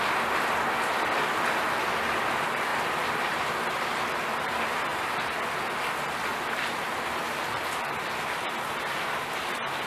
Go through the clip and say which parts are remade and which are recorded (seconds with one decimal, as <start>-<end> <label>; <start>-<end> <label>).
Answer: 0.0-4.9 recorded; 4.9-5.4 remade; 5.4-6.3 recorded; 6.3-8.1 remade; 8.1-9.9 recorded